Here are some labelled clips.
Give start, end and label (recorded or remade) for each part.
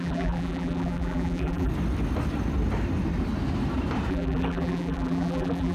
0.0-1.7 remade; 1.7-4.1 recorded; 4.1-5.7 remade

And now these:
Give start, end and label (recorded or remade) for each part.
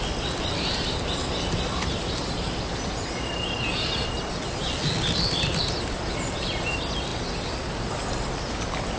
0.0-9.0 recorded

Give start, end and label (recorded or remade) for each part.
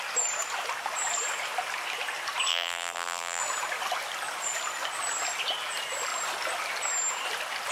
0.0-2.5 recorded; 2.5-3.4 remade; 3.4-7.7 recorded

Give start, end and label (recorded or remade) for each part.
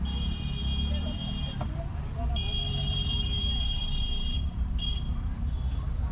0.0-1.9 recorded; 1.9-5.6 remade; 5.6-6.1 recorded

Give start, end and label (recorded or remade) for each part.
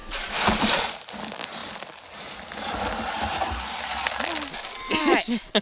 0.0-1.1 remade; 1.1-5.6 recorded